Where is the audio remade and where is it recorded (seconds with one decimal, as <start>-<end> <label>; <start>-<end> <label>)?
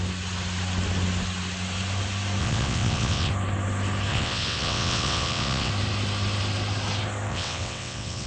0.0-2.4 recorded; 2.4-3.3 remade; 3.3-4.1 recorded; 4.1-5.7 remade; 5.7-7.3 recorded; 7.3-8.3 remade